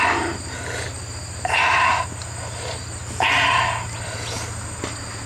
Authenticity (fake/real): real